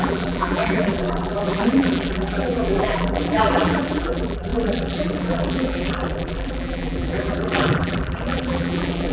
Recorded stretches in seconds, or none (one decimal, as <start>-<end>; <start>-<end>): none